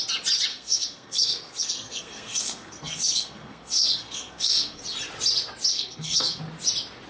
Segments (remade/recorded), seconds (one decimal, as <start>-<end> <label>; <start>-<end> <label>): 0.0-0.5 recorded; 0.5-4.8 remade; 4.8-5.7 recorded; 5.7-6.4 remade; 6.4-7.1 recorded